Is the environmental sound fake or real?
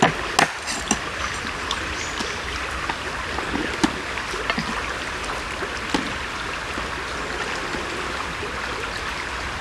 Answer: real